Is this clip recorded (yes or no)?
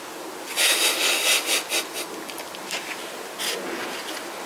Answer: yes